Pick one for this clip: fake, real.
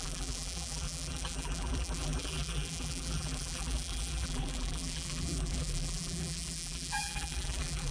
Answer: fake